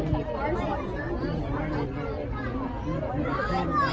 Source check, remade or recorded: recorded